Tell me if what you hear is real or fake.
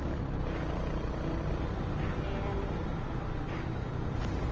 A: real